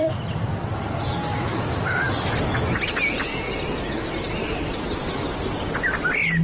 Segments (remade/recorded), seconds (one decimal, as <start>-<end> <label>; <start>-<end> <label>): 0.0-1.4 recorded; 1.4-2.0 remade; 2.0-6.4 recorded